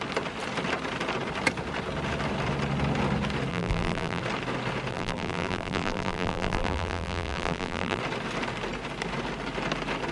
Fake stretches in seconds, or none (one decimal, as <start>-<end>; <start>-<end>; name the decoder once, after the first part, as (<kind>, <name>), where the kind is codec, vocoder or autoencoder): 3.5-4.2 (vocoder, BigVGAN v2); 4.9-8.0